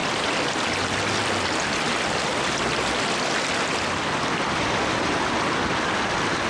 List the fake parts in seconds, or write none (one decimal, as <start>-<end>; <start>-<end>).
none